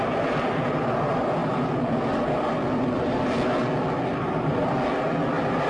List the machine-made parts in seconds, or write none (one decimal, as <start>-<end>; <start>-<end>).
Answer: none

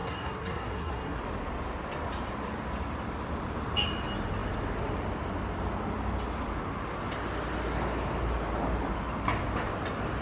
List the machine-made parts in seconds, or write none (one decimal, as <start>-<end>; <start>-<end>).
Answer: 0.0-1.2

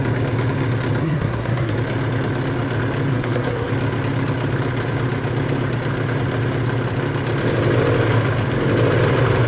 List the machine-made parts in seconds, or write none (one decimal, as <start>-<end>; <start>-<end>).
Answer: 1.0-1.7; 3.1-3.7

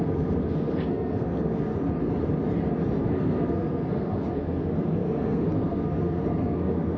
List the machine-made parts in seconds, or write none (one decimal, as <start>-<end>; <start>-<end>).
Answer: 0.0-1.7; 3.0-7.0

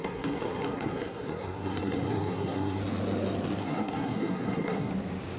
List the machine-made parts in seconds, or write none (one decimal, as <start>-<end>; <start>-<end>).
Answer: 0.0-2.8; 3.6-4.9

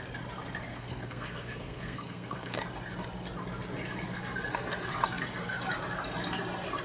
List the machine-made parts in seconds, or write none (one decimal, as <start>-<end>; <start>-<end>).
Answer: 0.7-2.6

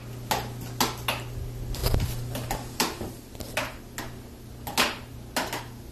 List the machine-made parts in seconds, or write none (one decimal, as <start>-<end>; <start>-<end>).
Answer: none